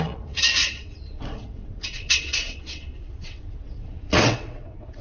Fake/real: fake